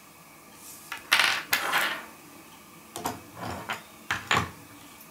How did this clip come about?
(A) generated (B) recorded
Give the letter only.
B